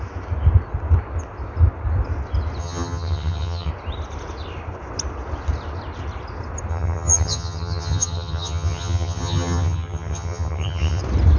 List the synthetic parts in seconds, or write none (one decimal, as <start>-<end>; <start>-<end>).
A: 2.6-3.7; 6.7-11.0